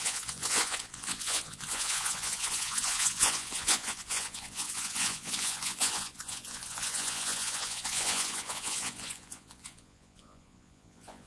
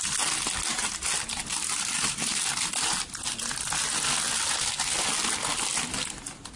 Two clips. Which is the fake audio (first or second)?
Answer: first